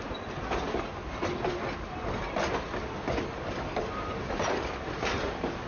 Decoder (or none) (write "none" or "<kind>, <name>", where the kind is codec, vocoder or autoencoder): none